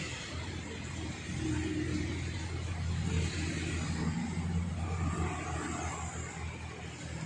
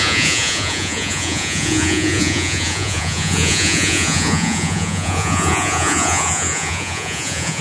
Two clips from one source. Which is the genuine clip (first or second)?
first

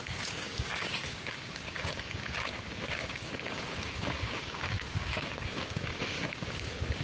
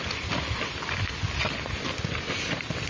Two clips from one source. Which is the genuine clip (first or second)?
second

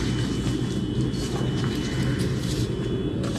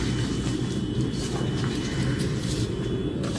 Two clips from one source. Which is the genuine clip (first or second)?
first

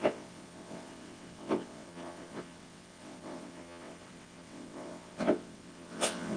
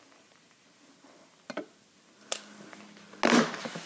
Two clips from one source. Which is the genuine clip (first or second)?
second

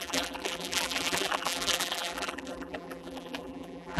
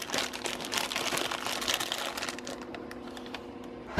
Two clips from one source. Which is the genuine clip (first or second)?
second